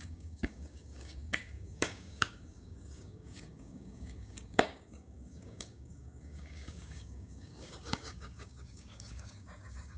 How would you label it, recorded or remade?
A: remade